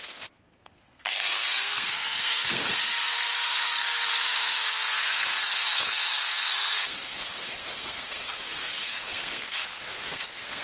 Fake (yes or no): yes